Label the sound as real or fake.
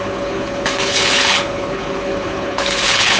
fake